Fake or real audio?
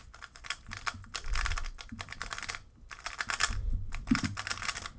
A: real